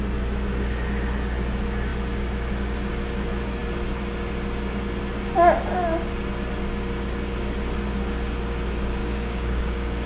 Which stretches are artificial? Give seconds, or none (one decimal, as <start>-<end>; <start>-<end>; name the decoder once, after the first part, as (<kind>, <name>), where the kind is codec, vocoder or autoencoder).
9.0-10.1 (codec, DAC)